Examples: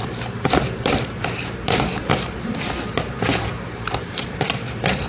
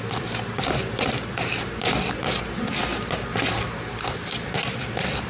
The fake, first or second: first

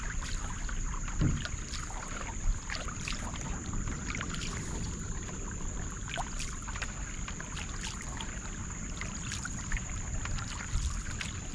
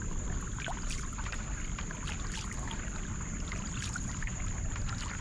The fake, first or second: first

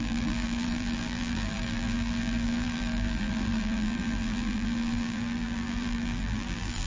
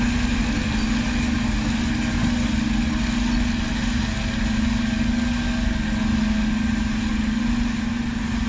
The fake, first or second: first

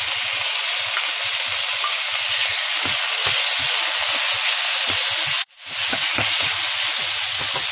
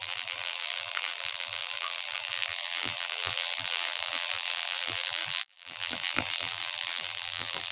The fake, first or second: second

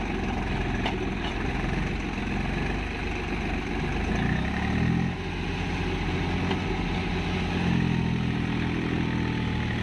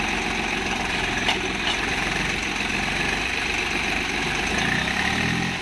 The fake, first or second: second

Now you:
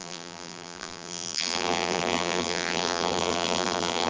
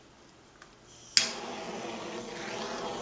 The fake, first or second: first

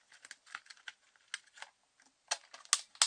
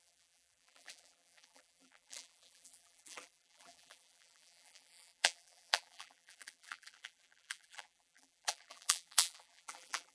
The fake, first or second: second